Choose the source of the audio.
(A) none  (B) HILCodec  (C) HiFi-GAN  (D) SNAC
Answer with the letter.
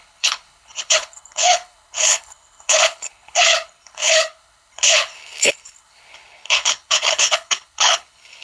B